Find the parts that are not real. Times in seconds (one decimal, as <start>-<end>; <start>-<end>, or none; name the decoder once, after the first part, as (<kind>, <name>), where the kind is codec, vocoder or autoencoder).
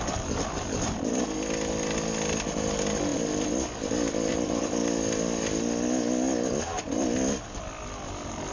none